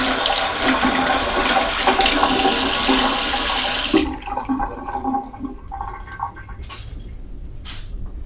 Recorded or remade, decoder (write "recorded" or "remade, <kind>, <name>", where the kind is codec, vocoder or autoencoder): recorded